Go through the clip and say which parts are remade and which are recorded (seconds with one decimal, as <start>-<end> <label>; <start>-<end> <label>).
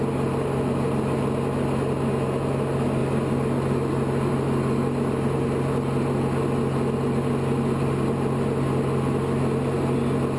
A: 0.0-10.4 recorded